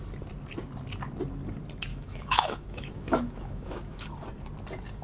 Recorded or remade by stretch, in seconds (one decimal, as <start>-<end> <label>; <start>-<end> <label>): 0.0-1.9 recorded; 1.9-4.1 remade; 4.1-5.0 recorded